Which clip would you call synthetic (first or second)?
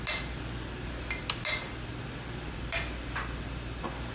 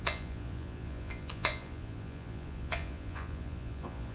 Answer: second